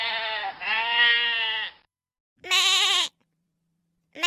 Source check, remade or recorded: recorded